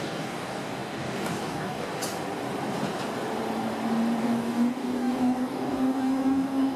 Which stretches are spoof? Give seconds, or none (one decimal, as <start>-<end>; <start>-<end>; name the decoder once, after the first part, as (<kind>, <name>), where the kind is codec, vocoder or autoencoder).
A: 0.0-1.9 (codec, DAC); 4.2-6.8